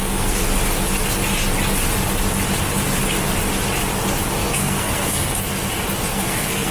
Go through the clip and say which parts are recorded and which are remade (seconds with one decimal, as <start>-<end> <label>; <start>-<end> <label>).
0.0-0.4 remade; 0.4-4.3 recorded; 4.3-5.5 remade; 5.5-6.1 recorded; 6.1-6.7 remade